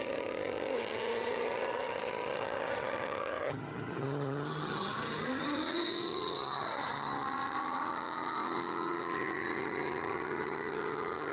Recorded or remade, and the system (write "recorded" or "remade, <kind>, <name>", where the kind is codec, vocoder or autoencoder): remade, vocoder, HiFi-GAN